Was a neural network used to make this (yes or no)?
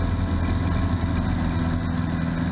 no